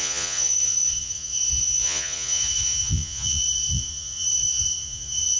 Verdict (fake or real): fake